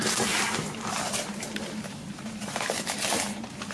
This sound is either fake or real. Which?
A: fake